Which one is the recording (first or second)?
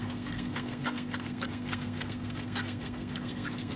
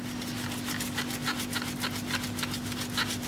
second